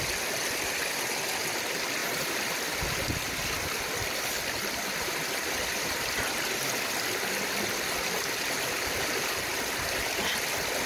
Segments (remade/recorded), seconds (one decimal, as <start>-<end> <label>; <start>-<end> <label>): 0.0-10.9 recorded